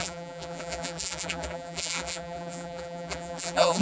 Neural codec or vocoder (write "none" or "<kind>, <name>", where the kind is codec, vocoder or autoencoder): vocoder, BigVGAN v2